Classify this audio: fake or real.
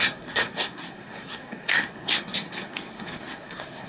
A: fake